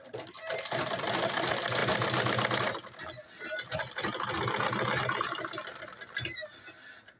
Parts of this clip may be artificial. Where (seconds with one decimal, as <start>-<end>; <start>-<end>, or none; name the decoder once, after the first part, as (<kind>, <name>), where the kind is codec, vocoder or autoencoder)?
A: none